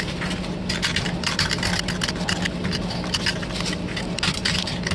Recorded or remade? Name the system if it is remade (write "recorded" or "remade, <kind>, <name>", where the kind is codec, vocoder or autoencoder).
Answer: recorded